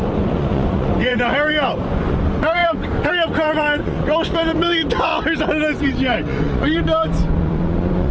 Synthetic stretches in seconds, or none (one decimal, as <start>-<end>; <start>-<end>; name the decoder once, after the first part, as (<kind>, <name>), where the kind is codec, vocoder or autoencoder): 0.0-5.1 (vocoder, Vocos); 5.8-8.1